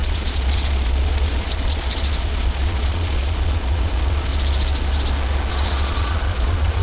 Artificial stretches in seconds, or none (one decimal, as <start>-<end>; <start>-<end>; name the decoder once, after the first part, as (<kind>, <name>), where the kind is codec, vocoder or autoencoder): 0.0-4.3 (vocoder, Vocos); 5.5-6.8